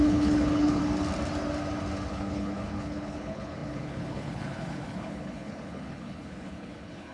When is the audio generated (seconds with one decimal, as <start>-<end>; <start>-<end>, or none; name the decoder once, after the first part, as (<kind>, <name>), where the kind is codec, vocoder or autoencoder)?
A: 0.0-0.8 (codec, HILCodec); 2.1-7.1